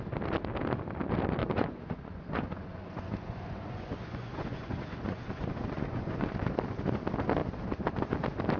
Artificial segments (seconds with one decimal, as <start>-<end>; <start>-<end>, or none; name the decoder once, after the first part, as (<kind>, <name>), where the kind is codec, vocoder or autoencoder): 1.4-6.3 (vocoder, Vocos)